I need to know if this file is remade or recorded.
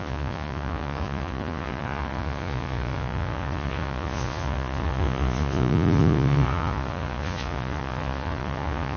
remade